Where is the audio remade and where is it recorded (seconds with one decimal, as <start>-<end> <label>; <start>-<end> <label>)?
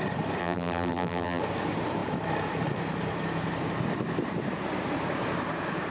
0.0-0.4 recorded; 0.4-1.4 remade; 1.4-5.9 recorded